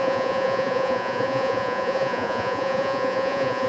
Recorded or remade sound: remade